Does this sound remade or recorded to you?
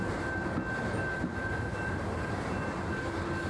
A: recorded